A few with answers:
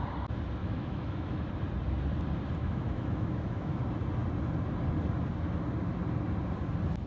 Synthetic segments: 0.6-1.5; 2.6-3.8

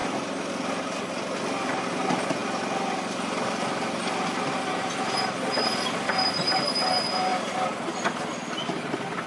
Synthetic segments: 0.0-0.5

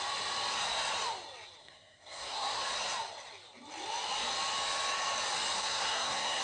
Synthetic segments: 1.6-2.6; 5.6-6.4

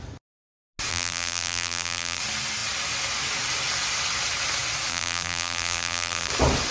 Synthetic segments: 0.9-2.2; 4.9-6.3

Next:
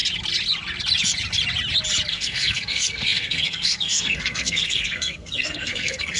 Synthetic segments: 2.1-6.2